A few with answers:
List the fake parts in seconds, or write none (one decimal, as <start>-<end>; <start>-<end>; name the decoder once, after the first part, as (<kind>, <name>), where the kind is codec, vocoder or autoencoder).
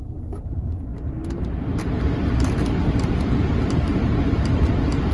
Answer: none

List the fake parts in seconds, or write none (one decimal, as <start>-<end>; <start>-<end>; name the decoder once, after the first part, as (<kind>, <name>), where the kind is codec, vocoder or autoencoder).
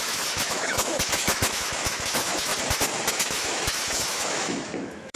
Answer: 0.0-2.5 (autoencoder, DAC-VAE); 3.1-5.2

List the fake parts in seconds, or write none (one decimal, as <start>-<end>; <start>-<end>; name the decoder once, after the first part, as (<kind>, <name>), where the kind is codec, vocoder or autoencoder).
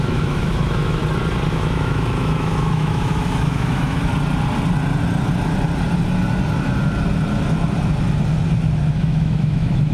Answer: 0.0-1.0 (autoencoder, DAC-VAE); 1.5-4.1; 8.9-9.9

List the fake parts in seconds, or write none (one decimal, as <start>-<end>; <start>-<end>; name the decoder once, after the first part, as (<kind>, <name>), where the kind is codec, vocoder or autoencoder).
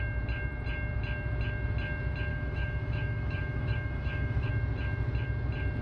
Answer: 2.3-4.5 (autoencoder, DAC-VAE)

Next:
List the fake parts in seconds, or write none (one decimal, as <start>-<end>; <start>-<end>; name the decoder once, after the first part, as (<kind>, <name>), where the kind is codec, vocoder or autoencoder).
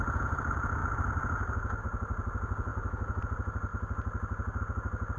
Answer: 2.7-3.2 (autoencoder, DAC-VAE)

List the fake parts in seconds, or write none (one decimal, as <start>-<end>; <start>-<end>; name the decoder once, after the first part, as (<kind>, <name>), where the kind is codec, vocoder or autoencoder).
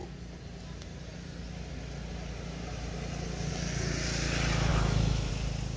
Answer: 4.7-5.3 (autoencoder, DAC-VAE)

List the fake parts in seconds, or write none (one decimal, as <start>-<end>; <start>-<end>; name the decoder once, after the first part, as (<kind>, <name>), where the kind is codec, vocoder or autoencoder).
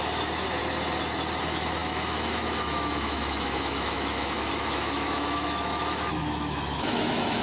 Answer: 0.0-0.6 (autoencoder, DAC-VAE); 1.4-7.4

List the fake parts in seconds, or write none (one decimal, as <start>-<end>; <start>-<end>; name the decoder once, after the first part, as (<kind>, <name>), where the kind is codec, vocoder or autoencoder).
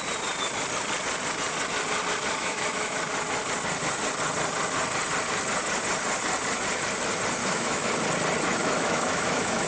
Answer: 2.4-3.0 (autoencoder, DAC-VAE); 7.4-7.9; 8.6-9.7